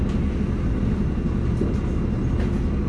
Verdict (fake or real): real